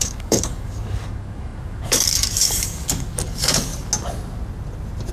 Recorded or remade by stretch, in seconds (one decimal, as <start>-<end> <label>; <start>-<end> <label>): 0.0-3.7 remade; 3.7-5.1 recorded